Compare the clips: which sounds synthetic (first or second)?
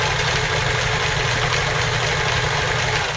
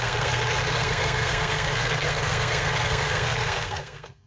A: second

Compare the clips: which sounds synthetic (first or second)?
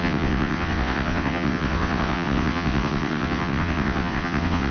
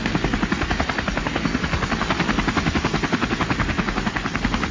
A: first